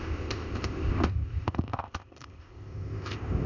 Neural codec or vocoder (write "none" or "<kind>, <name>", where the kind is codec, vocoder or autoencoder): codec, ZipCodec